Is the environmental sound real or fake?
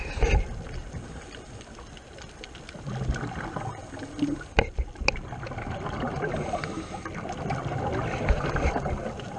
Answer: real